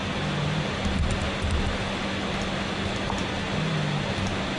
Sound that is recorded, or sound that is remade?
recorded